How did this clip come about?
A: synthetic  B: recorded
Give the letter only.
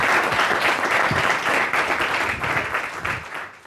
B